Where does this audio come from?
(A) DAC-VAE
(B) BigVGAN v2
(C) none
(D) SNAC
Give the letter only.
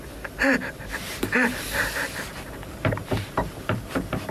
B